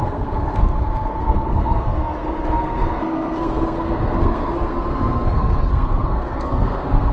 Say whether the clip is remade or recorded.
remade